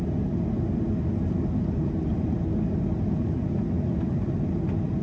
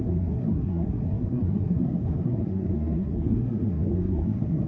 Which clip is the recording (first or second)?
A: first